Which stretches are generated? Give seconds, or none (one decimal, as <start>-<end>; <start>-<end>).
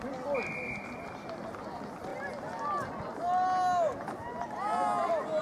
none